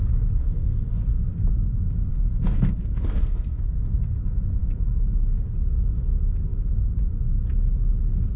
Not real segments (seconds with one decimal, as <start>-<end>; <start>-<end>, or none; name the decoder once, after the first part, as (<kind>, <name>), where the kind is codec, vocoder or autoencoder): 0.4-1.0 (codec, SNAC); 2.1-4.1